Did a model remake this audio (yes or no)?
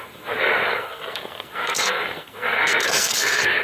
yes